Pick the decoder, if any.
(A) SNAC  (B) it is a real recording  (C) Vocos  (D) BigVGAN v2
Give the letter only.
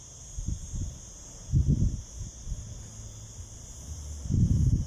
D